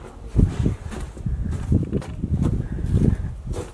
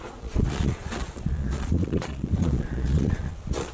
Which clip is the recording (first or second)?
first